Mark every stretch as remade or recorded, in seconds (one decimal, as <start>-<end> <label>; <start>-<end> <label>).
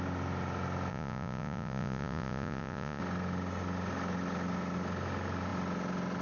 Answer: 0.0-0.9 recorded; 0.9-3.0 remade; 3.0-6.2 recorded